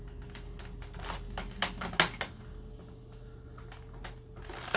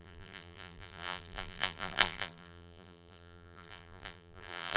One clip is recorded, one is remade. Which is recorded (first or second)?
first